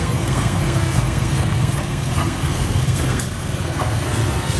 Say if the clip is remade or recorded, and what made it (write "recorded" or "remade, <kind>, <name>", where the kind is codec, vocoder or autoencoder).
remade, codec, SNAC